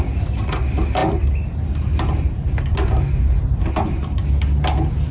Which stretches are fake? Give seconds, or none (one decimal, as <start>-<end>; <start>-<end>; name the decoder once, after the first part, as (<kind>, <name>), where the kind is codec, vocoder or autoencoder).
none